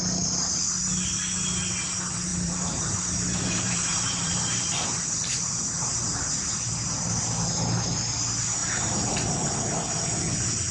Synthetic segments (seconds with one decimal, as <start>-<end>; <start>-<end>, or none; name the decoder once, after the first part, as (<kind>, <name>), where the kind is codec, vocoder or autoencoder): 2.3-6.2 (vocoder, BigVGAN v2); 8.6-9.1